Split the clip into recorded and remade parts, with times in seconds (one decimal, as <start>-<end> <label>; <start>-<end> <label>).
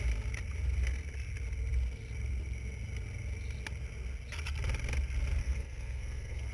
0.0-5.4 recorded; 5.4-6.5 remade